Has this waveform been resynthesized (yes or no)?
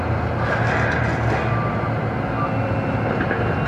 no